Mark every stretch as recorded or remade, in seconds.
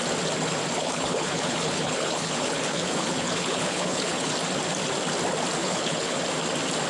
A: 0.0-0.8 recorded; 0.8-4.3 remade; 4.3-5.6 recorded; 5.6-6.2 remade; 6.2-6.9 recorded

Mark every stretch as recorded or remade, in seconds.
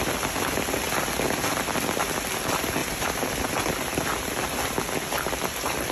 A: 0.0-2.8 recorded; 2.8-3.3 remade; 3.3-5.9 recorded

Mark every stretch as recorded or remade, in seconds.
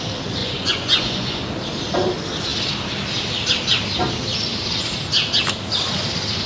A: 0.0-0.4 recorded; 0.4-1.4 remade; 1.4-6.5 recorded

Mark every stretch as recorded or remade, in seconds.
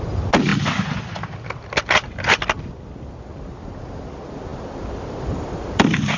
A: 0.0-6.2 recorded